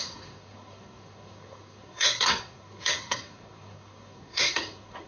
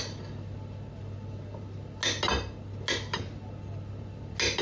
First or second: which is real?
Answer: second